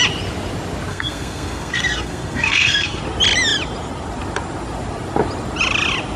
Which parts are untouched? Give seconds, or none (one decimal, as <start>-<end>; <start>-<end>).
0.0-0.9; 3.0-6.2